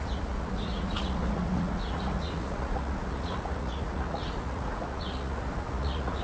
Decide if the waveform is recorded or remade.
remade